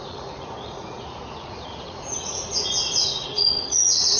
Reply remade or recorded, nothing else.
remade